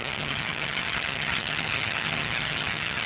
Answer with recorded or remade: remade